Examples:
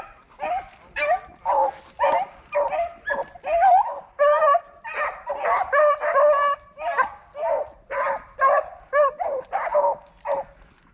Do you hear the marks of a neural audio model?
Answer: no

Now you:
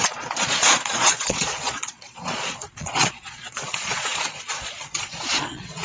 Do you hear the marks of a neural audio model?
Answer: yes